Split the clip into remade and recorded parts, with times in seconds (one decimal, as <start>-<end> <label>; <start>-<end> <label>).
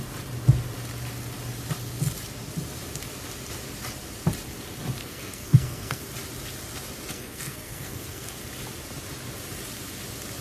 0.0-5.0 recorded; 5.0-6.0 remade; 6.0-7.1 recorded; 7.1-8.4 remade; 8.4-10.4 recorded